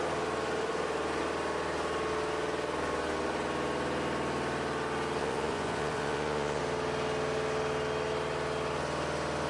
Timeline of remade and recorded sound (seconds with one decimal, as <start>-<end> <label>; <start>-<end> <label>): 0.0-5.2 recorded; 5.2-6.6 remade; 6.6-9.5 recorded